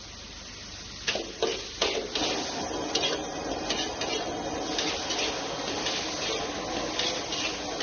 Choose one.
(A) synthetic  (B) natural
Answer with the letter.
B